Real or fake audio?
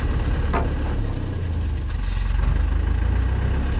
real